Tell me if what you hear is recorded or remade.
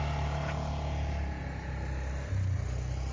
recorded